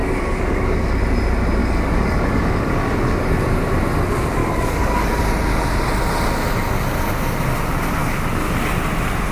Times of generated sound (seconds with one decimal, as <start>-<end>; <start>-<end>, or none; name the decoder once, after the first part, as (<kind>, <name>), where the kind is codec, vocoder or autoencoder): 0.0-1.0 (codec, DAC); 1.6-3.2; 4.4-5.2; 8.0-8.5